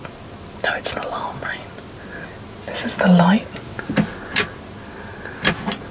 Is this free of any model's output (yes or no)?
yes